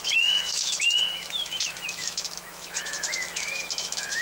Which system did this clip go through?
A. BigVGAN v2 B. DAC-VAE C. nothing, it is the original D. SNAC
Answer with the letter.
B